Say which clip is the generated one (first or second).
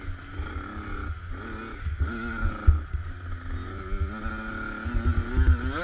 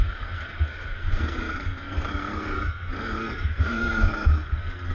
second